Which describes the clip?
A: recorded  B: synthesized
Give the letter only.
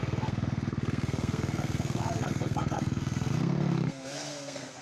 B